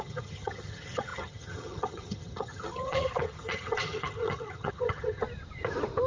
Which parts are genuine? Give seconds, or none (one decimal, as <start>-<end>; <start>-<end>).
5.2-6.1